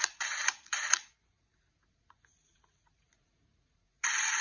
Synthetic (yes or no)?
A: yes